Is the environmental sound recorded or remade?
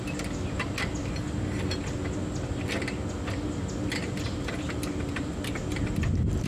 recorded